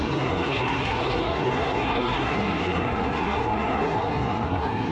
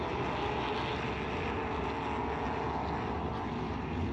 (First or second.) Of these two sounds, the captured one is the second